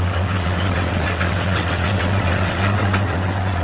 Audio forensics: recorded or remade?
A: remade